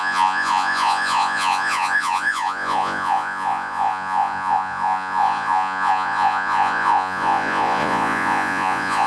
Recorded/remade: remade